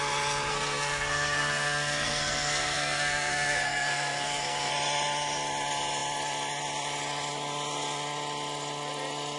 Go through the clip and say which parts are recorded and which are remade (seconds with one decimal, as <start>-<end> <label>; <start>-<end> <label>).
0.0-0.5 recorded; 0.5-4.7 remade; 4.7-9.4 recorded